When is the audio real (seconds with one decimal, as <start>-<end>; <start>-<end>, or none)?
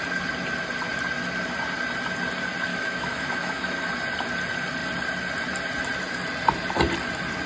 0.0-2.7; 3.9-7.5